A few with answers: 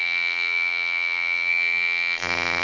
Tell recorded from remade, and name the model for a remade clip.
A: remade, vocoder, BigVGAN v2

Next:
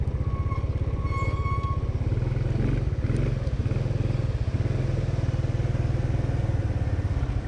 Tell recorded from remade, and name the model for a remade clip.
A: recorded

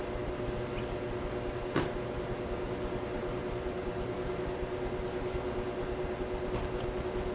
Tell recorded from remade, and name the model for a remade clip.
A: recorded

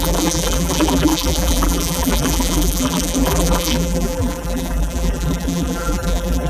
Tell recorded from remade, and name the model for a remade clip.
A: remade, vocoder, BigVGAN v2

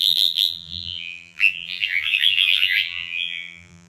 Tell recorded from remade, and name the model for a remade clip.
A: remade, vocoder, BigVGAN v2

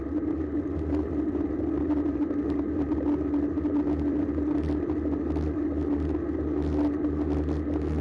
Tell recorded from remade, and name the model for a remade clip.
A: recorded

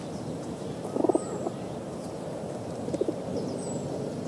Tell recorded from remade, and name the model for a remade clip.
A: remade, vocoder, BigVGAN v2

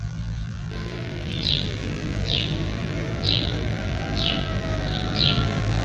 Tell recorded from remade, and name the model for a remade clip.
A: remade, vocoder, BigVGAN v2